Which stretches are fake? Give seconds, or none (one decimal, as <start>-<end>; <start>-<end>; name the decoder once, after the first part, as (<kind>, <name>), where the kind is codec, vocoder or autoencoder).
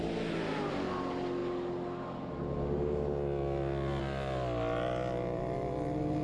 none